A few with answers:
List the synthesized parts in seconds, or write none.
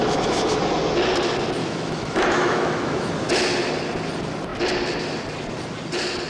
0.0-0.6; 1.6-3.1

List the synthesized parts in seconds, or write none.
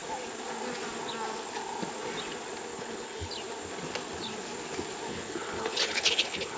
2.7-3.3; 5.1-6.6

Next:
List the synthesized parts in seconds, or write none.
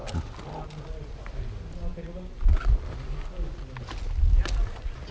none